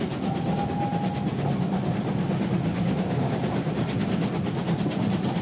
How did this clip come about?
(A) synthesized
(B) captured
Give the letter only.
B